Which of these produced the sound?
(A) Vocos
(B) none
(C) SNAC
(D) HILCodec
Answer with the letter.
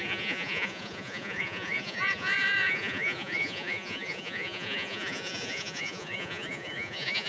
A